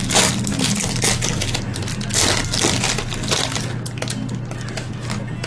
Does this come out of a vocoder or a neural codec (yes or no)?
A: no